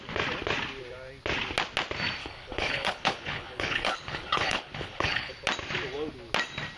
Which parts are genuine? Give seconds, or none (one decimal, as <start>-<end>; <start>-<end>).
0.0-2.2; 5.3-6.8